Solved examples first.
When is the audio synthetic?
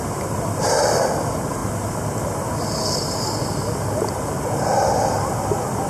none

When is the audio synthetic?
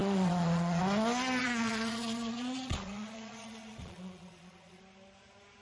0.0-0.8 (vocoder, Vocos); 1.4-4.8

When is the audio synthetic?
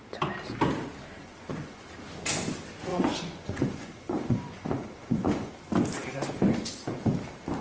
1.2-1.8 (vocoder, Vocos); 2.9-5.5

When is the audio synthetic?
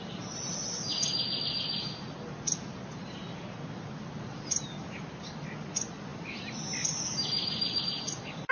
none